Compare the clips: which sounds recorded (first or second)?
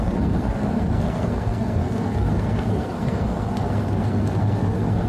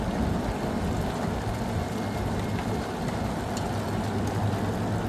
second